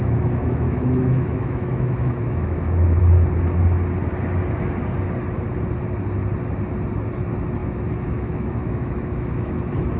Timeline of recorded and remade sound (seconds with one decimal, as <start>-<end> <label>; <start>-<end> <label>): 0.0-3.0 remade; 3.0-7.6 recorded; 7.6-9.6 remade; 9.6-10.0 recorded